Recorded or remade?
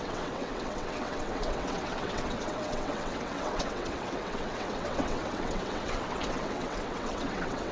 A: remade